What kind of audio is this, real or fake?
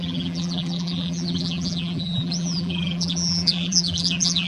fake